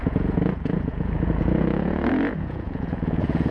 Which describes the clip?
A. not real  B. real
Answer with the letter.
A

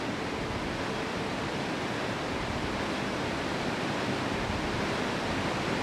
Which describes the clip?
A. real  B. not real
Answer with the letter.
A